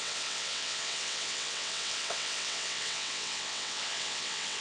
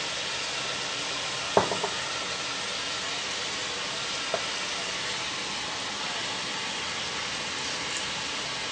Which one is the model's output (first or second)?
first